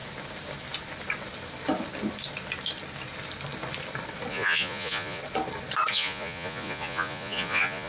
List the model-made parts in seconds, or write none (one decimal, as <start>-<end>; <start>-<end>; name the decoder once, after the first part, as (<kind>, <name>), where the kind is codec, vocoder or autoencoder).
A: 4.3-5.2 (vocoder, Vocos); 5.9-7.9